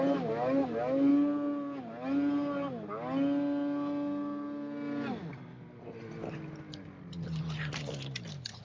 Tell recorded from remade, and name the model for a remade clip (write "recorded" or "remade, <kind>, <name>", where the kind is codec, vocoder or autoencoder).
recorded